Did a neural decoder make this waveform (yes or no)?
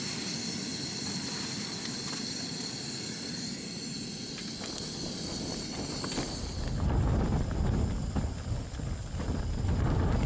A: no